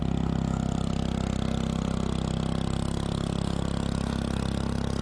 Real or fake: real